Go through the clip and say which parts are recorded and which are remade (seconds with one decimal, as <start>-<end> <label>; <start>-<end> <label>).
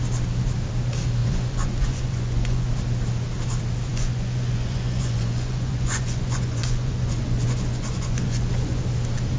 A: 0.0-1.2 recorded; 1.2-2.7 remade; 2.7-3.9 recorded; 3.9-8.8 remade; 8.8-9.4 recorded